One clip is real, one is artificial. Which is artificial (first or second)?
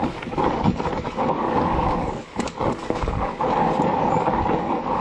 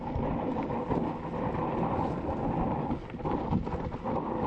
first